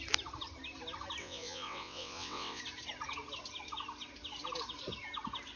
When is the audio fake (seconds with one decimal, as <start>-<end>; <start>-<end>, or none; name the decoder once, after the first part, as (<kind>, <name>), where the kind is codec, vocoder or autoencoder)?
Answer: 1.2-2.6 (vocoder, WaveNeXt)